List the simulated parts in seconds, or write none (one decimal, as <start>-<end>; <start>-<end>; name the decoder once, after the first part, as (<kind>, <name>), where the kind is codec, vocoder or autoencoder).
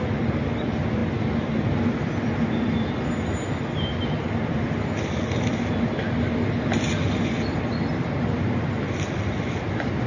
none